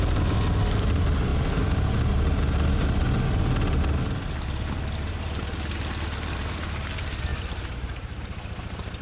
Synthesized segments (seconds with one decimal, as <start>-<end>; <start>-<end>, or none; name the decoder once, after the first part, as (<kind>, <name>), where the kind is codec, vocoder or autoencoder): 7.3-8.2 (vocoder, BigVGAN v2)